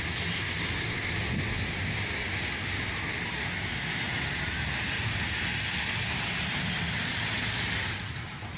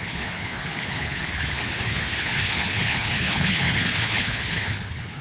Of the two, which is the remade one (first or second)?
second